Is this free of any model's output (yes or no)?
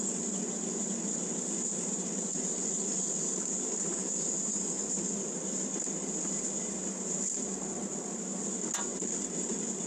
yes